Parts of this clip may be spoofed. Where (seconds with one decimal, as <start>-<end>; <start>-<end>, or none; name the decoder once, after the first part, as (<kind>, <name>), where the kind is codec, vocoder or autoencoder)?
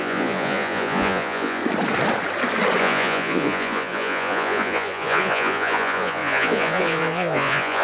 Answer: 0.0-1.6 (vocoder, Vocos); 2.8-7.8